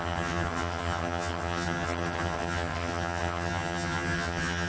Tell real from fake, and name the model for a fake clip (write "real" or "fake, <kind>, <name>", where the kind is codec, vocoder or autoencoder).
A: fake, vocoder, HiFi-GAN